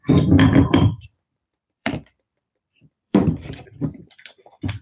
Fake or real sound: fake